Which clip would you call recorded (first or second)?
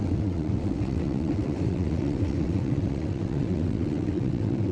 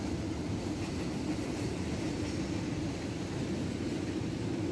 second